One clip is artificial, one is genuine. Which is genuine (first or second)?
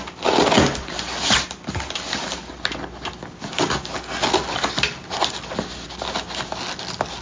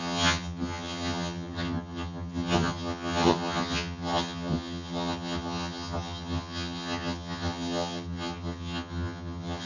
first